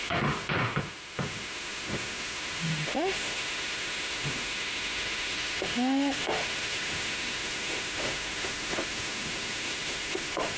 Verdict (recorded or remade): remade